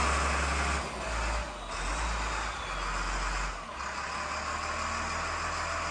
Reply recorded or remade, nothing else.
recorded